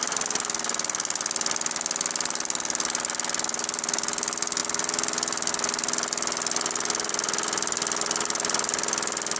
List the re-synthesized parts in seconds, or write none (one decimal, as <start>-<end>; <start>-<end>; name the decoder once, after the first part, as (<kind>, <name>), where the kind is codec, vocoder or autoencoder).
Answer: none